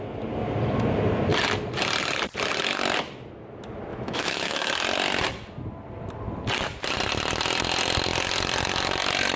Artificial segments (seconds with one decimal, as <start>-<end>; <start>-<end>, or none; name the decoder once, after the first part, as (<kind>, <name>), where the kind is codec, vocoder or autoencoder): 3.9-4.7 (autoencoder, DAC-VAE)